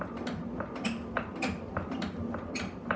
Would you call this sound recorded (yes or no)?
yes